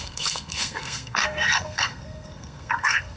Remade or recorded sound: remade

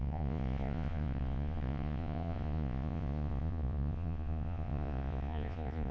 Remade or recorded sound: remade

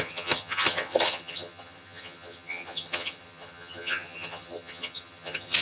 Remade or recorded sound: remade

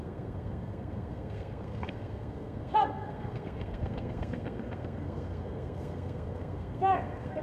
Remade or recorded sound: remade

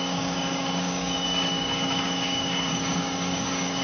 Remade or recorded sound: remade